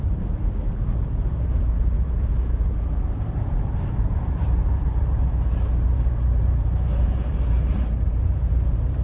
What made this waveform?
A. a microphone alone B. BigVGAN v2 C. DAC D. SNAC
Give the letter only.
B